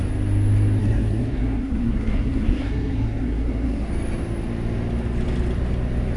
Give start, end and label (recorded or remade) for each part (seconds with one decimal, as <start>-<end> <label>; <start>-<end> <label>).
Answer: 0.0-0.8 recorded; 0.8-3.9 remade; 3.9-6.2 recorded